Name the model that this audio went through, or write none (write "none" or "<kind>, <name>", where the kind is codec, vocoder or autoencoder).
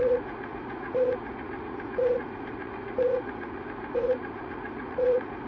vocoder, Vocos